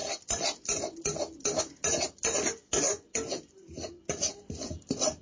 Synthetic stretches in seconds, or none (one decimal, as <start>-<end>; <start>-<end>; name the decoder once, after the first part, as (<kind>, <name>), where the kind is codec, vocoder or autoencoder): none